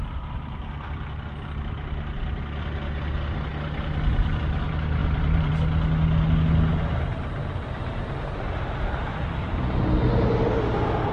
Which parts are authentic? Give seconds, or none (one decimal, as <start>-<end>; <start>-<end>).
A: 0.0-5.0; 5.5-6.7; 8.1-11.1